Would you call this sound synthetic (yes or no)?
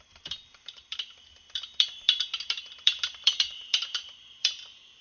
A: yes